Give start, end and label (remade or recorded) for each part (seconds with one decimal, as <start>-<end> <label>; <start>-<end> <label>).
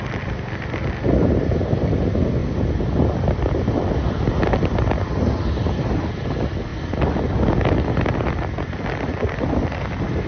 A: 0.0-10.3 recorded